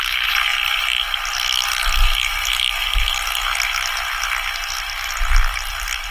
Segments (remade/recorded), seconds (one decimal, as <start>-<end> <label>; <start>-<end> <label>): 0.0-6.1 recorded